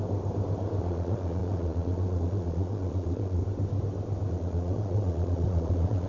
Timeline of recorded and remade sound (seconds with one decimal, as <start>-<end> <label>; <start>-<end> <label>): 0.0-0.8 recorded; 0.8-3.4 remade; 3.4-4.3 recorded; 4.3-6.1 remade